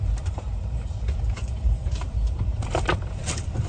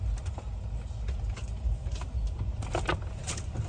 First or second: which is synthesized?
first